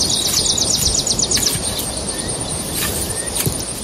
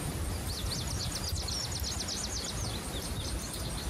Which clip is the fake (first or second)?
first